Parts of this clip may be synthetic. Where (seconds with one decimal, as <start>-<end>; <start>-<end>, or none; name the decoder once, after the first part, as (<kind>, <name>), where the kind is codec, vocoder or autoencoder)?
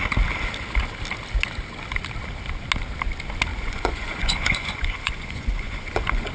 3.5-6.3 (vocoder, Vocos)